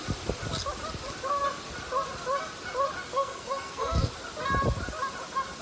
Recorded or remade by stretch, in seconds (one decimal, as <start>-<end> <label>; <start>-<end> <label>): 0.0-3.1 recorded; 3.1-4.1 remade; 4.1-5.6 recorded

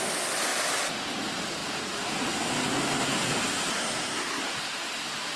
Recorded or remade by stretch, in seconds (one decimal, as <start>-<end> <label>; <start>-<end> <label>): 0.0-3.7 recorded; 3.7-4.4 remade; 4.4-5.4 recorded

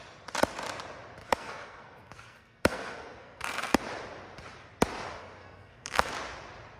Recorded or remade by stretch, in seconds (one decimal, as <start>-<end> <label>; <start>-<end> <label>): 0.0-1.2 recorded; 1.2-3.8 remade; 3.8-5.2 recorded; 5.2-6.1 remade; 6.1-6.8 recorded

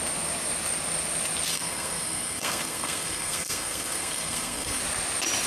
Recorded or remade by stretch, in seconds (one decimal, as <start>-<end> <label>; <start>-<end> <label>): 0.0-1.5 recorded; 1.5-4.8 remade; 4.8-5.5 recorded

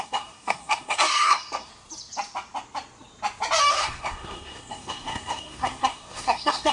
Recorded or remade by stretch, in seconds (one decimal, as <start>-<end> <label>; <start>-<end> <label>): 0.0-1.7 remade; 1.7-3.7 recorded; 3.7-6.7 remade

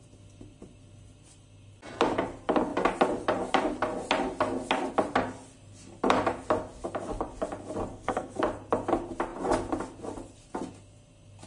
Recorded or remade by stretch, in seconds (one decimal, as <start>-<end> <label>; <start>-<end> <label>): 0.0-7.9 recorded; 7.9-8.4 remade; 8.4-11.5 recorded